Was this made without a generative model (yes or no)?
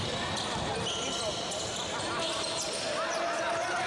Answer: yes